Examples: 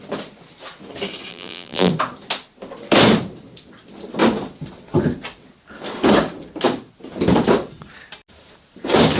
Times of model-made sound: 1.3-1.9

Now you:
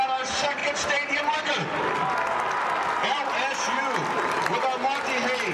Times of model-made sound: none

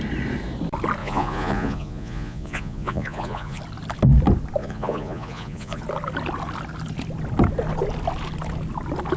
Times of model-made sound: 1.0-3.6; 4.6-5.8

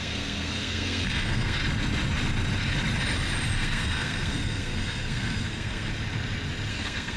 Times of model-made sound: 0.0-1.6; 3.6-5.9; 6.7-7.2

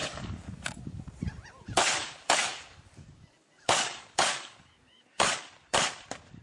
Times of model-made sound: 0.0-1.0; 1.8-5.4

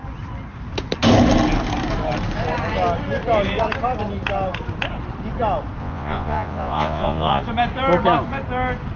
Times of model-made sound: 5.8-7.4